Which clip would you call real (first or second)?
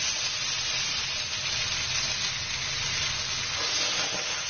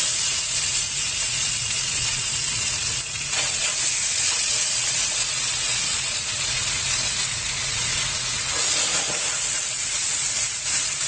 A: first